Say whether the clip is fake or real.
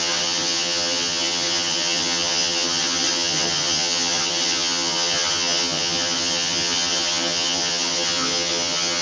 fake